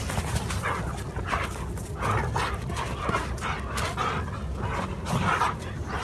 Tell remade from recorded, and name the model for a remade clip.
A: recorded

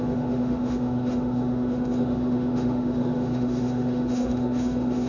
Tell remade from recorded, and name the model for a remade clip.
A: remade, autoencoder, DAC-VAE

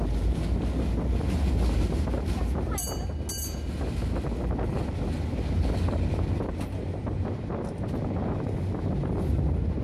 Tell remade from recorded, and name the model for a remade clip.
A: recorded